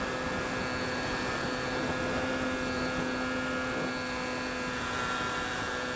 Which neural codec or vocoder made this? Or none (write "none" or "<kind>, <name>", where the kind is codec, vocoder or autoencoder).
none